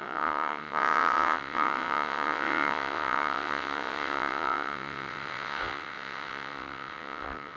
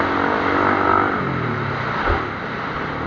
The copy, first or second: first